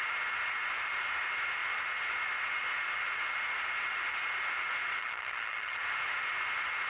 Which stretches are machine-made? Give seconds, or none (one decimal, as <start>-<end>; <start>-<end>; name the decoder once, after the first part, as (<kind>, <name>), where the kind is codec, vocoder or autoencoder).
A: 5.0-5.8 (vocoder, HiFi-GAN)